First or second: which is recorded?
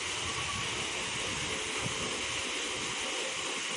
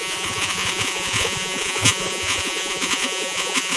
first